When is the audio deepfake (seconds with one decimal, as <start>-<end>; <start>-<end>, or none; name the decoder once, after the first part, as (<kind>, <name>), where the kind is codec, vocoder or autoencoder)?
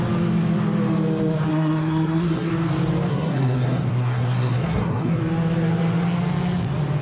1.5-2.5 (codec, SNAC); 3.1-5.2